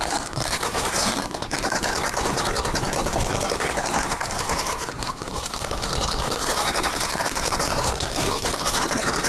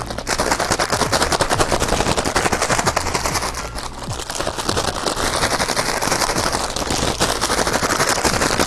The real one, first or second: second